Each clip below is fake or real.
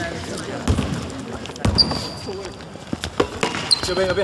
real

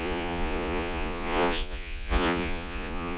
fake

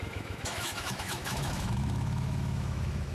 fake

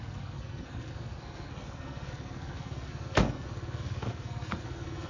fake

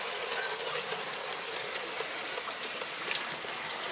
real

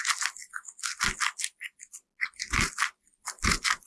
real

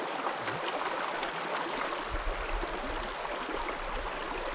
real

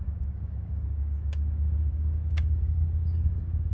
fake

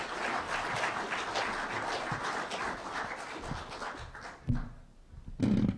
real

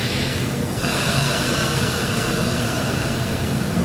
fake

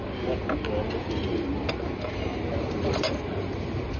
real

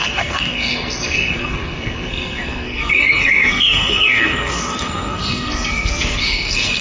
fake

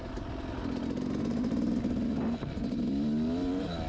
real